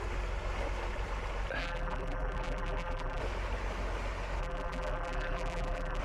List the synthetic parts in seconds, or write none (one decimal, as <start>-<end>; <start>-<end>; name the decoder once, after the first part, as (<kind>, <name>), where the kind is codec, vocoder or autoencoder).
1.6-3.2 (vocoder, BigVGAN v2); 4.4-6.0